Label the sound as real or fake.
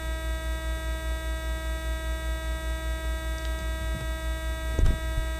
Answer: real